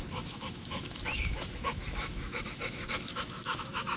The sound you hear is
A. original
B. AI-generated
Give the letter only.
B